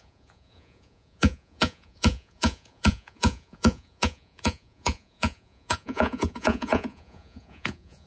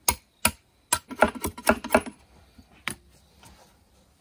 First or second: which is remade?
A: first